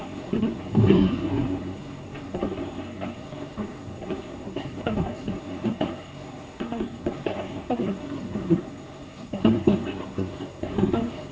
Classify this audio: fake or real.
fake